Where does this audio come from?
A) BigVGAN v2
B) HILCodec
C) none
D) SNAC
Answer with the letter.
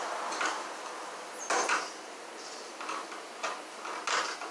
C